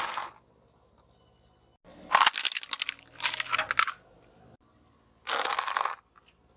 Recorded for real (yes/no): yes